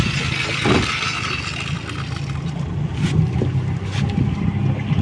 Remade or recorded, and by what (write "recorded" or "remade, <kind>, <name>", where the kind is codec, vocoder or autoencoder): recorded